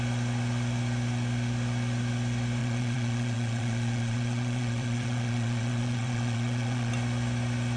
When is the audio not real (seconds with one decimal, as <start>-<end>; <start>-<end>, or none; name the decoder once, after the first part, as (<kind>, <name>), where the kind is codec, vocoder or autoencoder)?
2.6-6.9 (vocoder, WaveNeXt)